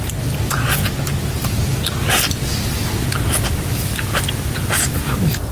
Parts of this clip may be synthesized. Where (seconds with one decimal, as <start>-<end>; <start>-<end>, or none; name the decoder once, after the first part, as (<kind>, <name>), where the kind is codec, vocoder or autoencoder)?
none